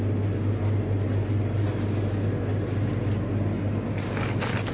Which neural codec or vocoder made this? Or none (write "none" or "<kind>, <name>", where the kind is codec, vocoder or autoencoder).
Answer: none